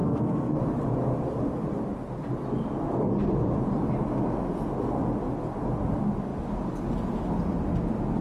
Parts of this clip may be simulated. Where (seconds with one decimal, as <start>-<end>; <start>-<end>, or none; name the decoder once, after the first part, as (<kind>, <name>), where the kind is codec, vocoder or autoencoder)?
0.0-0.6 (codec, SNAC)